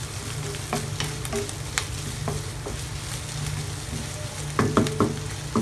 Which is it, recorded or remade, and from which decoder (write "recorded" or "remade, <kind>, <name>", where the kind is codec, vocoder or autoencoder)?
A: recorded